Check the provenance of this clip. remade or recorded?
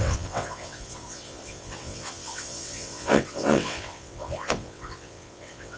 remade